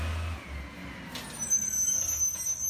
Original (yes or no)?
yes